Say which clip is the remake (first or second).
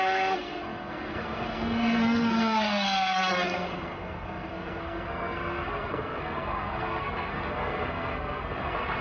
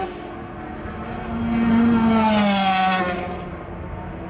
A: first